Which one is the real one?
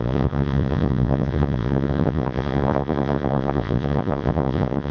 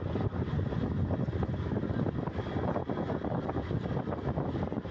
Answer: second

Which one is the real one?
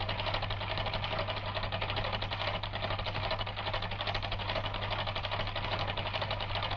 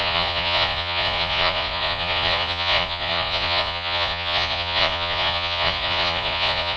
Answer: first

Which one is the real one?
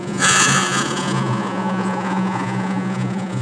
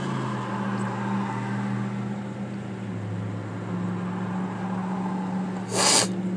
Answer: second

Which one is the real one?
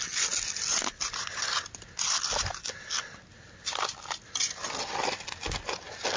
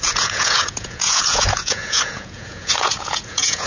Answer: first